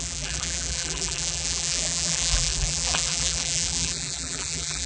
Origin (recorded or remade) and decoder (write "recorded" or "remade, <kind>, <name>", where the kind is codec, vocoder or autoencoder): remade, vocoder, BigVGAN v2